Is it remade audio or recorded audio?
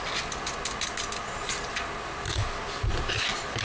recorded